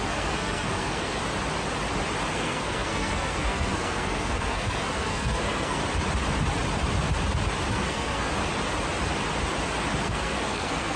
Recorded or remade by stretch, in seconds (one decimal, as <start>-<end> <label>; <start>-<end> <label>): 0.0-1.2 remade; 1.2-2.3 recorded; 2.3-5.8 remade; 5.8-7.7 recorded; 7.7-8.3 remade; 8.3-10.0 recorded; 10.0-11.0 remade